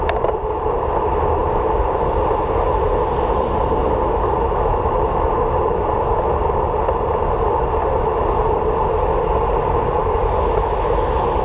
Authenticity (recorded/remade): recorded